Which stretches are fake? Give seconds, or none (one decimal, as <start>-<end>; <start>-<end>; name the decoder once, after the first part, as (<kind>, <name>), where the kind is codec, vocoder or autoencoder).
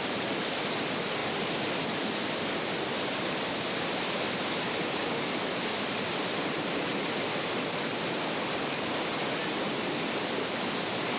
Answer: none